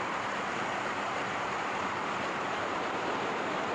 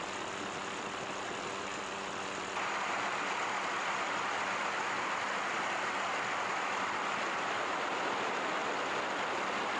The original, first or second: second